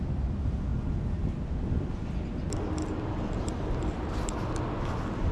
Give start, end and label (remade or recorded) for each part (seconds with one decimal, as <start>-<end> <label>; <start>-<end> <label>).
0.0-5.3 recorded